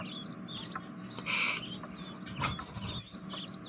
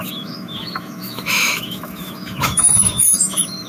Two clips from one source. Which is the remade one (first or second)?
second